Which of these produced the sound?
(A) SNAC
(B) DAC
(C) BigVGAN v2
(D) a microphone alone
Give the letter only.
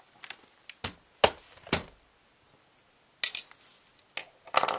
D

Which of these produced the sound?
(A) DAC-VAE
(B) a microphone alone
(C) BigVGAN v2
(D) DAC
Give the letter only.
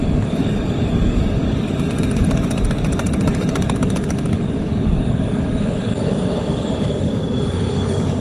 D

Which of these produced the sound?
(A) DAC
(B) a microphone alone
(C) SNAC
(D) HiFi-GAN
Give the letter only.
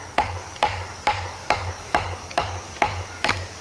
A